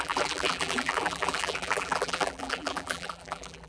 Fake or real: fake